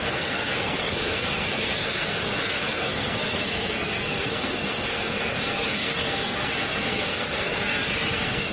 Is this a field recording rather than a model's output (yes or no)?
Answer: no